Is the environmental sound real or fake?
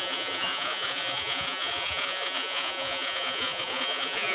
fake